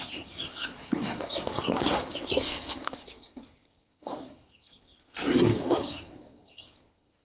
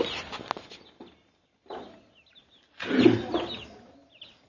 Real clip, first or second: second